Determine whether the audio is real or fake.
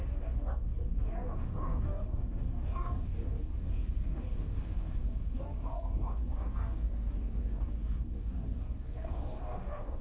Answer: fake